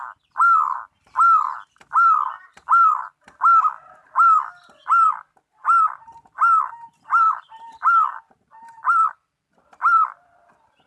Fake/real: real